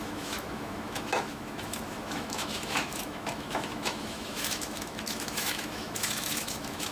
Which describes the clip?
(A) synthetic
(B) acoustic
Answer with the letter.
A